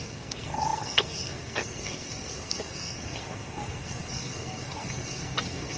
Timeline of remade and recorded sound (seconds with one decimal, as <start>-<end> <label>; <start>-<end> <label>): 0.0-5.8 remade

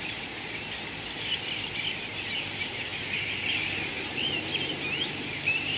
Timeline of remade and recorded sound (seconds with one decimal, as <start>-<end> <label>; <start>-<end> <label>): 0.0-5.8 recorded

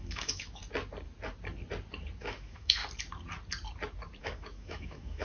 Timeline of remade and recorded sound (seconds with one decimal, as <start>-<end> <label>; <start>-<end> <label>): 0.0-0.6 remade; 0.6-2.2 recorded; 2.2-2.8 remade; 2.8-4.2 recorded; 4.2-5.2 remade

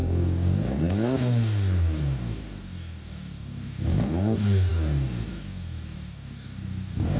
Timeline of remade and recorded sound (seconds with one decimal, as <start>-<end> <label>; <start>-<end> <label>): 0.0-7.2 remade

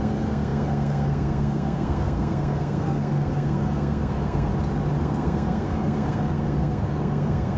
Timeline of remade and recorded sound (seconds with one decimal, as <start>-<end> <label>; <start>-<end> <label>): 0.0-4.5 remade; 4.5-5.0 recorded; 5.0-7.6 remade

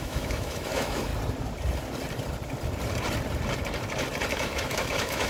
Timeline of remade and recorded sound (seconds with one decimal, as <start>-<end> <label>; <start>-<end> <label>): 0.0-1.1 remade; 1.1-4.3 recorded; 4.3-5.3 remade

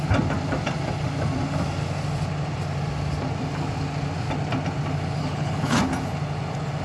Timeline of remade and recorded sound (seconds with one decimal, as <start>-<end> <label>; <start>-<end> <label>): 0.0-5.2 recorded; 5.2-5.8 remade; 5.8-6.8 recorded